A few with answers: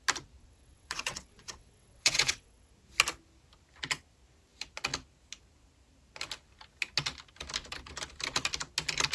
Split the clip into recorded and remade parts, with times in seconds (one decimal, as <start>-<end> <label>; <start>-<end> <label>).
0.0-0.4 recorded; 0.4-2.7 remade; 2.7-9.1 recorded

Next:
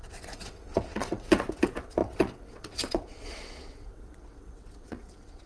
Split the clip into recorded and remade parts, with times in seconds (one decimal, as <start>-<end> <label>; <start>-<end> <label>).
0.0-5.5 remade

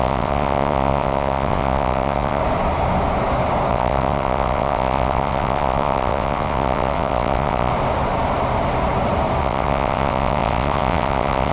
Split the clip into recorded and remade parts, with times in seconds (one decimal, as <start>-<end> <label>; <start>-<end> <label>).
0.0-2.4 remade; 2.4-3.7 recorded; 3.7-7.7 remade; 7.7-9.4 recorded; 9.4-11.5 remade

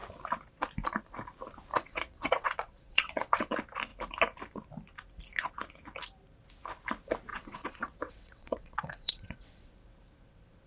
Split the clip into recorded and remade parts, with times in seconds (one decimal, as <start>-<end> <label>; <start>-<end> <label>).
0.0-1.7 recorded; 1.7-3.5 remade; 3.5-7.3 recorded; 7.3-9.7 remade; 9.7-10.7 recorded

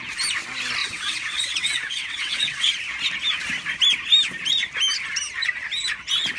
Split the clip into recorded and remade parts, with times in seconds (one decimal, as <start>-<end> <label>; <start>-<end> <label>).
0.0-0.8 recorded; 0.8-2.7 remade; 2.7-6.4 recorded

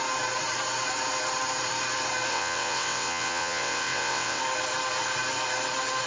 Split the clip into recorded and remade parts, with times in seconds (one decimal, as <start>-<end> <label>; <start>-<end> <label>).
0.0-2.3 recorded; 2.3-4.4 remade; 4.4-6.1 recorded

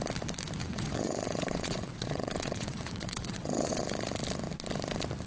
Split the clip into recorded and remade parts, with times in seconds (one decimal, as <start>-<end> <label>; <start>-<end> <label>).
0.0-0.6 recorded; 0.6-3.8 remade; 3.8-5.3 recorded

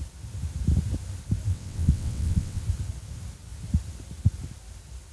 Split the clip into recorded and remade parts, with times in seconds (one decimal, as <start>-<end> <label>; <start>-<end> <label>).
0.0-1.5 recorded; 1.5-2.6 remade; 2.6-5.1 recorded